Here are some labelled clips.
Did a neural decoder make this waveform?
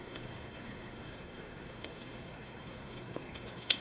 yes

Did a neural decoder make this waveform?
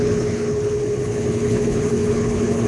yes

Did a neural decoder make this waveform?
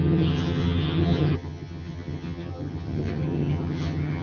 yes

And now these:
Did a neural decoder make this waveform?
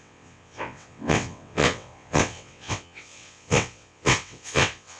yes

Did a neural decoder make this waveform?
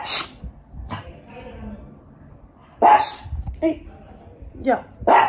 yes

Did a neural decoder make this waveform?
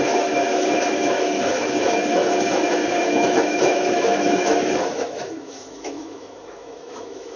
yes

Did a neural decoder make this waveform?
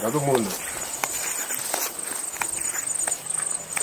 no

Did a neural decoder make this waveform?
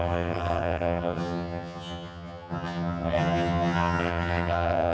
yes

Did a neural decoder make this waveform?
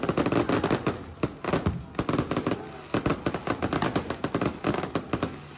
no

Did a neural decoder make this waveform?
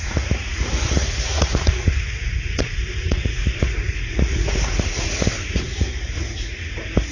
yes